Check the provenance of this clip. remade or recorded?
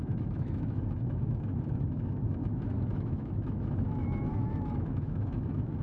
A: remade